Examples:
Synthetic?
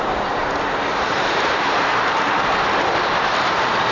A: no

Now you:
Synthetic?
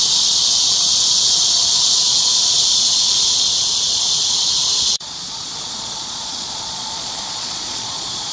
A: yes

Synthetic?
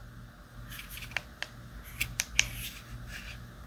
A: no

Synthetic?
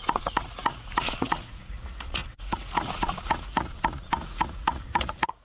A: yes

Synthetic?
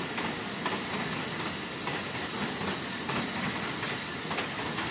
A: no